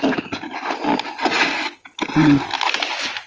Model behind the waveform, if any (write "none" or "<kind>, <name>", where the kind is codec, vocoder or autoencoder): none